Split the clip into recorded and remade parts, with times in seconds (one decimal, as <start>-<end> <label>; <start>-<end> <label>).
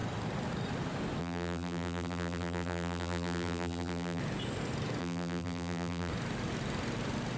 0.0-1.2 recorded; 1.2-4.2 remade; 4.2-5.0 recorded; 5.0-6.1 remade; 6.1-7.4 recorded